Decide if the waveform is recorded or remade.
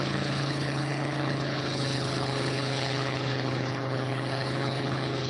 remade